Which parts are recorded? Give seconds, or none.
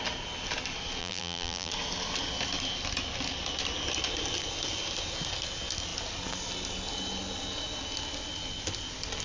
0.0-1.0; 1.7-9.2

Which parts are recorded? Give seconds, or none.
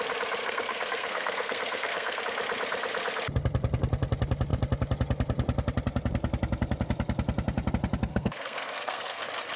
0.0-0.4; 2.2-8.1; 9.2-9.6